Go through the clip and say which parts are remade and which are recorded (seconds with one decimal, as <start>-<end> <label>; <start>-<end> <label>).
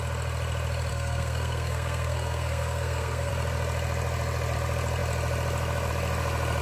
0.0-0.9 recorded; 0.9-3.3 remade; 3.3-6.6 recorded